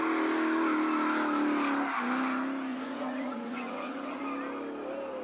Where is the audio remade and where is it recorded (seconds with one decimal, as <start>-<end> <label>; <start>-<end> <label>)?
0.0-2.7 recorded; 2.7-4.2 remade; 4.2-5.2 recorded